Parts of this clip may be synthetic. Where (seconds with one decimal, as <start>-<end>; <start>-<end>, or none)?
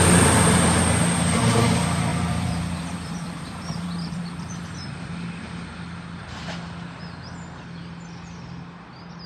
2.1-4.5